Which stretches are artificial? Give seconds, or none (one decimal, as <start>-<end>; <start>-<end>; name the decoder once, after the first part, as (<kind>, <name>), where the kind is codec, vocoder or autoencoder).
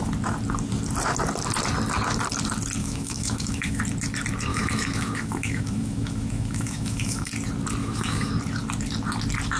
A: 2.8-3.8 (autoencoder, DAC-VAE); 4.5-7.3; 7.8-8.3